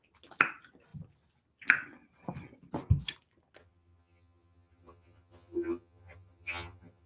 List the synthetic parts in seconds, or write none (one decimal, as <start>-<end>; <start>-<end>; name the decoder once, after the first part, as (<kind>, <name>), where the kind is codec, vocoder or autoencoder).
3.6-7.1 (vocoder, HiFi-GAN)